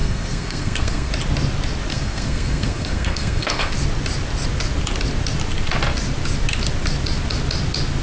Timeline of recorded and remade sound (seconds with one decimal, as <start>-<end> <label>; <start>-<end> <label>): 0.0-1.1 remade; 1.1-1.9 recorded; 1.9-3.7 remade; 3.7-8.0 recorded